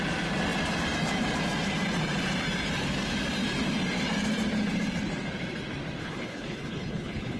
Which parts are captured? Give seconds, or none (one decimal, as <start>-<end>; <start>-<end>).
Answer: 0.0-6.0